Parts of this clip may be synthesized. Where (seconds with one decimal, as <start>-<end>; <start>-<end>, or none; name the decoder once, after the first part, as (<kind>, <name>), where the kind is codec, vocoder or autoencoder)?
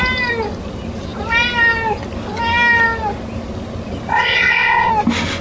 4.1-4.9 (codec, ZipCodec)